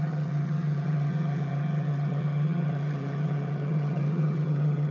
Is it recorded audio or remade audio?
remade